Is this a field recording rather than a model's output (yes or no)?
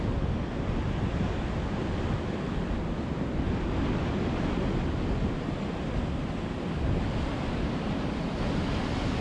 yes